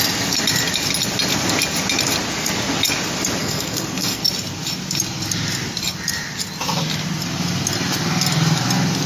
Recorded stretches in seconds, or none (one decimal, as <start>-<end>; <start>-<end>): 0.0-3.4; 4.2-9.1